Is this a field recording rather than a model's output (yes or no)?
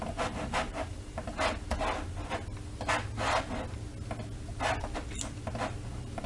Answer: yes